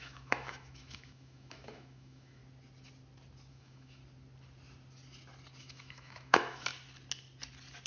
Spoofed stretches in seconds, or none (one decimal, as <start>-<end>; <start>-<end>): 0.0-2.4; 3.5-4.0; 5.6-6.7